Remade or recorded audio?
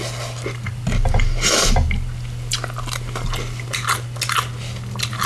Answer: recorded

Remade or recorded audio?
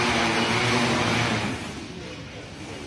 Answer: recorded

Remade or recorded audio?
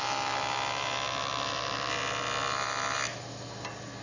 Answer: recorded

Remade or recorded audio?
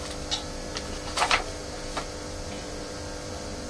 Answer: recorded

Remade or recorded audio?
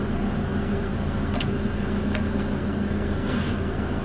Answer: remade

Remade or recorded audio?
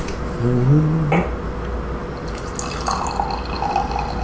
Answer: recorded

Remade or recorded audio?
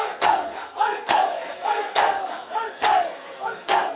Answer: remade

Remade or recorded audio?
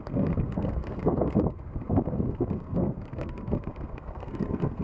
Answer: remade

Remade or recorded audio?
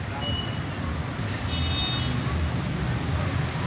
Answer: recorded